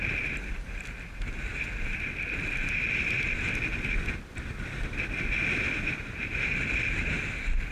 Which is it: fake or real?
real